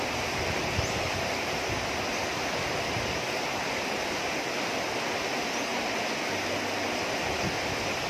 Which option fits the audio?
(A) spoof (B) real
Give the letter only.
B